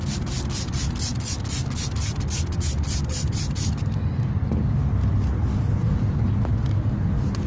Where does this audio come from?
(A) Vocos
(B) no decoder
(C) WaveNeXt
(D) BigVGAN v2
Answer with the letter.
B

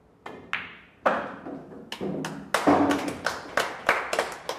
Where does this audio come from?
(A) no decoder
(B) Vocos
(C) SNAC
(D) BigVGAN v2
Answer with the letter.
A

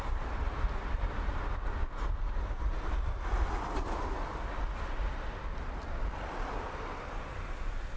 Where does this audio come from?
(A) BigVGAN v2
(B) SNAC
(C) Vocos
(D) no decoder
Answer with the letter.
D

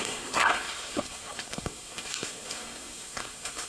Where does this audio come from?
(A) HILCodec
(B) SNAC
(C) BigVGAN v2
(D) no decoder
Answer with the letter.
B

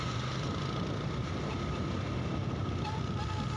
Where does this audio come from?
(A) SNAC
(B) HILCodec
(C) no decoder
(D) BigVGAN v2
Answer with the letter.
C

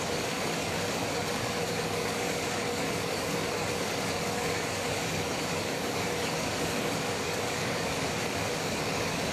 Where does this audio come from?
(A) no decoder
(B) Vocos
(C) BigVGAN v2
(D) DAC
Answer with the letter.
D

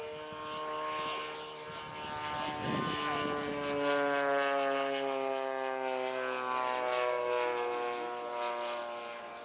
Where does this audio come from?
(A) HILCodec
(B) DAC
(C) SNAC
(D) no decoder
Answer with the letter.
D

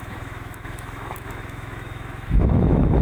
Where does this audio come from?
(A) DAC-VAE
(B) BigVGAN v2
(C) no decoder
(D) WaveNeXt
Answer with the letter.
A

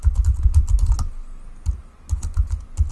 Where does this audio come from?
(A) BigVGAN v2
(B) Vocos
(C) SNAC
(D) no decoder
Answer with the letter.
D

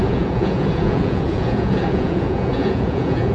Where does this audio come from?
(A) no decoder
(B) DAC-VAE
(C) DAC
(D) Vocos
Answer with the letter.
D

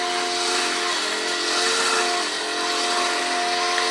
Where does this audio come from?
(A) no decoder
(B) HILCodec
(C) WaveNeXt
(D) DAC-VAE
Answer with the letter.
A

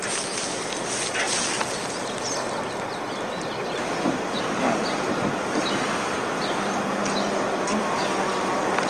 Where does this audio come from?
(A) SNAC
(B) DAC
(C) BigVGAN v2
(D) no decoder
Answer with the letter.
D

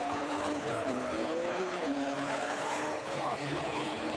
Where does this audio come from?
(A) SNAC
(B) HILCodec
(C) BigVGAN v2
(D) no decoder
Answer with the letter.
B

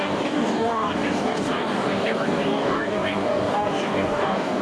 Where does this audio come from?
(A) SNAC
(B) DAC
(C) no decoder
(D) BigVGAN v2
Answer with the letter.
B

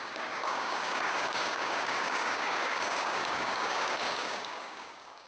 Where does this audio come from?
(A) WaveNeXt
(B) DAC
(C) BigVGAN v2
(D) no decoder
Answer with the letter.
B